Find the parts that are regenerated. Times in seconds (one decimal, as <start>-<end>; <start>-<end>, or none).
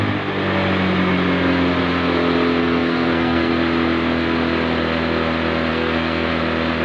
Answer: 2.6-3.5; 5.7-6.3